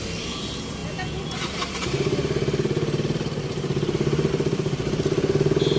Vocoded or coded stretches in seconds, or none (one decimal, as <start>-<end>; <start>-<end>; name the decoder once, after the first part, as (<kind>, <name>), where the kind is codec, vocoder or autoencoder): none

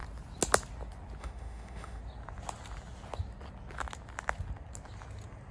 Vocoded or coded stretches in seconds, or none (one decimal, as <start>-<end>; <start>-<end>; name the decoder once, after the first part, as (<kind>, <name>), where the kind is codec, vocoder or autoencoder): 1.2-2.0 (autoencoder, DAC-VAE)

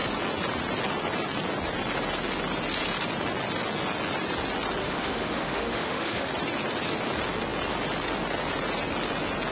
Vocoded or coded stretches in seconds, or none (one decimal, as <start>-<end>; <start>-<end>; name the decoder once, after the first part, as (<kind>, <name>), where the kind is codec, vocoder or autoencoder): 4.8-6.3 (autoencoder, DAC-VAE)

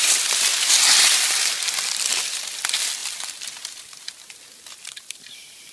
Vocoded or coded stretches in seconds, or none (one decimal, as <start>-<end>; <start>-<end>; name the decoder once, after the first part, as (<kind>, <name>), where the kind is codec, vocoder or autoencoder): none

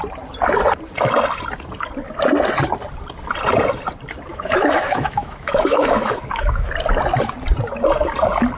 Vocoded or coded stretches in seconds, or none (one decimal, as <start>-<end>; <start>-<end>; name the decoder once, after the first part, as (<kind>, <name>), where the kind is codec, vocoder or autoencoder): 4.3-6.7 (autoencoder, DAC-VAE)